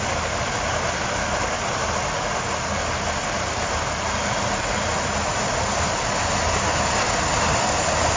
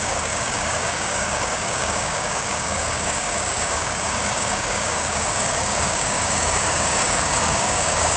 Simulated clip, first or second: second